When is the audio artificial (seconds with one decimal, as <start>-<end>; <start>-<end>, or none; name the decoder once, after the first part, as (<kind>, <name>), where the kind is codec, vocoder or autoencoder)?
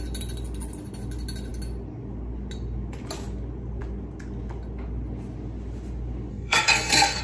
6.3-7.2 (codec, SNAC)